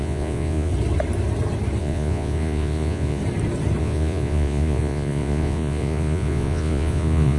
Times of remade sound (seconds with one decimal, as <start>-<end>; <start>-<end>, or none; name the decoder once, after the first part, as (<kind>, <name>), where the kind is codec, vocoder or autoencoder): 0.0-0.7 (vocoder, Vocos); 1.8-3.2; 3.8-7.4